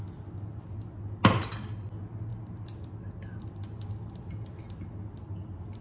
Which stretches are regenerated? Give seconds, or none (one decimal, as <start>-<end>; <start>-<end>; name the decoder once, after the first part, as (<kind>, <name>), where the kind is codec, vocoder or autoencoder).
none